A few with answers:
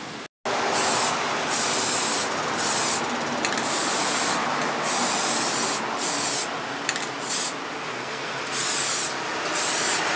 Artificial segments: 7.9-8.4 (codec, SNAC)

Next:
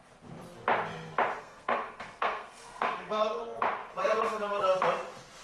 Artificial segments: 1.4-3.4 (codec, SNAC); 4.0-4.6